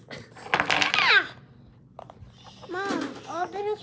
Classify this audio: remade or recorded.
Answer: recorded